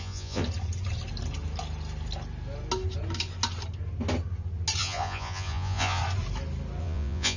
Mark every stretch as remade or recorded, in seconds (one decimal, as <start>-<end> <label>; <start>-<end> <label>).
0.0-0.4 remade; 0.4-4.8 recorded; 4.8-6.0 remade; 6.0-6.8 recorded; 6.8-7.4 remade